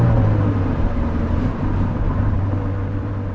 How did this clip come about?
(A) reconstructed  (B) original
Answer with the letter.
A